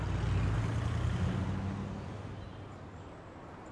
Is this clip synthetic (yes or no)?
no